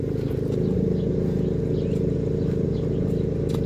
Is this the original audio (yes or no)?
yes